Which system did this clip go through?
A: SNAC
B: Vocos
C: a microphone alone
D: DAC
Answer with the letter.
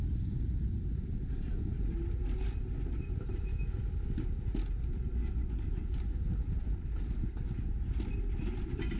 C